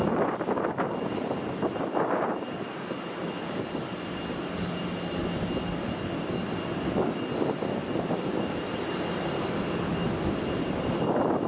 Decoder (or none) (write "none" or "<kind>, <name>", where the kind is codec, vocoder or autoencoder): none